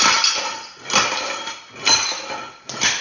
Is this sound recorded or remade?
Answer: recorded